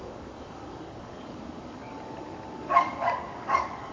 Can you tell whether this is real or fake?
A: fake